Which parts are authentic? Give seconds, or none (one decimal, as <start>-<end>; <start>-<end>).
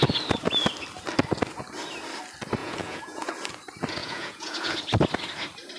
0.0-2.6; 3.3-4.0; 4.8-5.8